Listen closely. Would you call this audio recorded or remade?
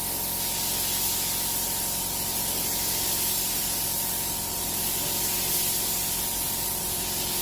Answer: recorded